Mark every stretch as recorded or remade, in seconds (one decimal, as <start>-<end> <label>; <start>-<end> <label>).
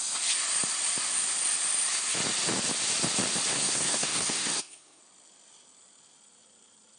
0.0-3.5 recorded; 3.5-5.0 remade; 5.0-7.0 recorded